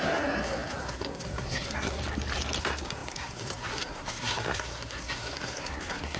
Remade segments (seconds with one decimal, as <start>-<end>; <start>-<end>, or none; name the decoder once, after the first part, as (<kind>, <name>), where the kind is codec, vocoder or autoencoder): 0.0-2.0 (codec, SNAC); 2.6-6.2